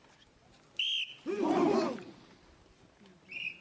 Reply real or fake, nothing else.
real